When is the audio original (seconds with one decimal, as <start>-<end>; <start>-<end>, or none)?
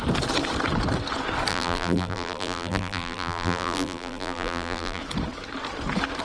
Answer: 0.0-1.5; 5.0-6.2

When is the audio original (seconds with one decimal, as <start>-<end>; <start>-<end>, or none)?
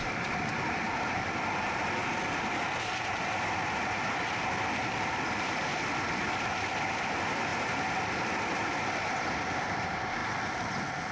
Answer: 2.0-5.4; 7.5-9.3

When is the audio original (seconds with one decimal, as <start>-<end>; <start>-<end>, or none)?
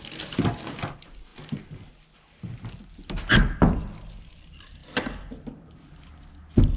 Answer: 0.0-6.8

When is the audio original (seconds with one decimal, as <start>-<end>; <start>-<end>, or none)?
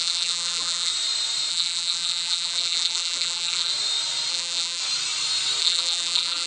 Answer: 0.9-1.5; 3.7-4.3; 4.8-5.6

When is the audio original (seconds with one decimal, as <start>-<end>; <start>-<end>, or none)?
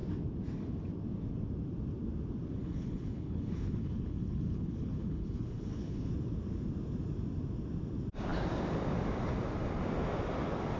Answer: 0.0-2.6; 6.1-10.8